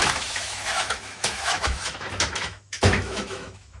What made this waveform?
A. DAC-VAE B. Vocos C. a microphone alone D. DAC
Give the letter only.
A